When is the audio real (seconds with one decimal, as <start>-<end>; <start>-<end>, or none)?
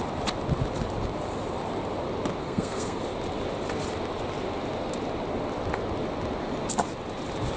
0.0-2.4; 3.0-7.6